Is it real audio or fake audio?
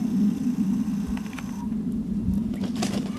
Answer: real